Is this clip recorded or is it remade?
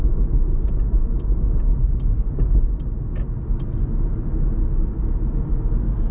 recorded